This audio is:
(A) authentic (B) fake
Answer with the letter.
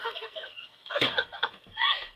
B